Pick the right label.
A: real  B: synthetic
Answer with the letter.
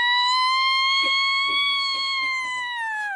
B